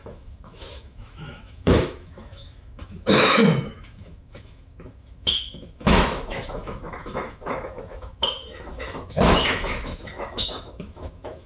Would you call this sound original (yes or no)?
no